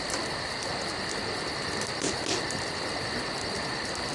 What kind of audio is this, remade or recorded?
recorded